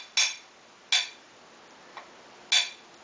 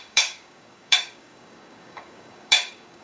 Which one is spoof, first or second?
second